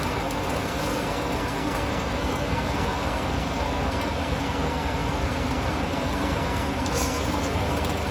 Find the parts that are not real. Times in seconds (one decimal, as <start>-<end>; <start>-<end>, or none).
0.0-8.1